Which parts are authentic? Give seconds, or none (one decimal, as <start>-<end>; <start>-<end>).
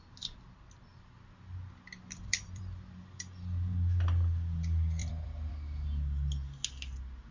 0.0-0.9; 3.4-5.0; 5.5-7.3